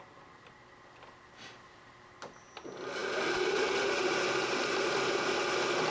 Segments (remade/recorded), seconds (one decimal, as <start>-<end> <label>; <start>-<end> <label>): 0.0-5.9 recorded